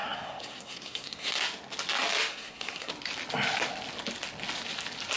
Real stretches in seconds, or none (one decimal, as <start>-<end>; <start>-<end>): 1.3-2.3; 2.9-5.2